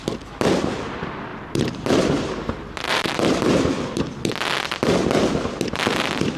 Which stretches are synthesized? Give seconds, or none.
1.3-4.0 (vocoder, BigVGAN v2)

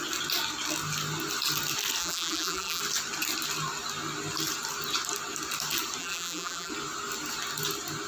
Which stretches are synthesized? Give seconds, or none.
2.0-2.8 (vocoder, BigVGAN v2); 6.0-6.7

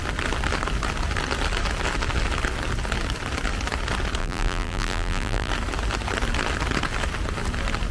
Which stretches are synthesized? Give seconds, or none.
4.2-5.5 (vocoder, BigVGAN v2)